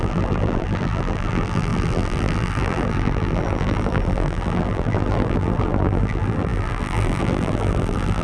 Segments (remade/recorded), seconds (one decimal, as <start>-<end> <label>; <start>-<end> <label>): 0.0-8.2 remade